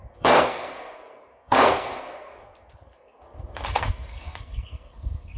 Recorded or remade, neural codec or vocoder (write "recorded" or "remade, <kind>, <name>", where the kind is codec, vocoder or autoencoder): remade, codec, SNAC